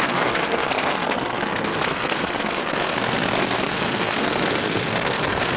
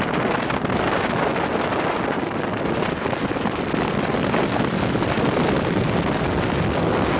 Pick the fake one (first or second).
first